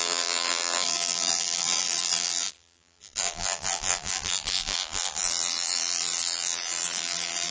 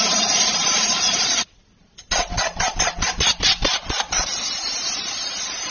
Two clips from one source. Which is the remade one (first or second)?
first